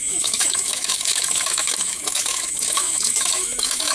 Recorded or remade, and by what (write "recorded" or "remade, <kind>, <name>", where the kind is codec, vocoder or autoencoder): remade, autoencoder, DAC-VAE